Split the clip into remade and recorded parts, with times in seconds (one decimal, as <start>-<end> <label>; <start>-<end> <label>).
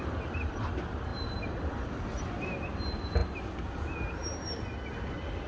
0.0-5.5 recorded